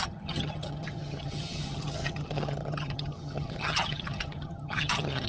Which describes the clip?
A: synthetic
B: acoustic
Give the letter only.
A